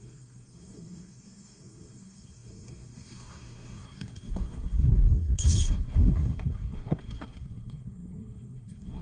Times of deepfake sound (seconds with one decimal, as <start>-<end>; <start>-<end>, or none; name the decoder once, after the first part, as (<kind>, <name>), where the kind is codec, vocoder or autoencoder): 0.0-9.0 (codec, SNAC)